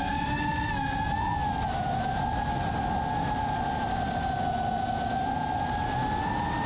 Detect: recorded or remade recorded